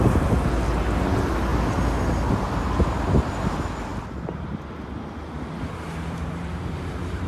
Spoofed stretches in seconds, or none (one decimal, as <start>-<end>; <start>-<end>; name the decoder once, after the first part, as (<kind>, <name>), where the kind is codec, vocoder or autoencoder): none